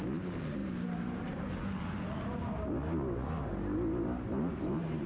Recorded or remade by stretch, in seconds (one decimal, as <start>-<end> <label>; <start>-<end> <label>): 0.0-5.1 remade